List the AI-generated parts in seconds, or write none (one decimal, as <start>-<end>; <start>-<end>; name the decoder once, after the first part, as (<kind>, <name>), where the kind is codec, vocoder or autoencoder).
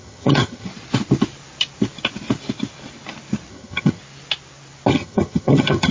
0.0-0.7 (vocoder, HiFi-GAN); 3.5-4.0; 4.9-5.9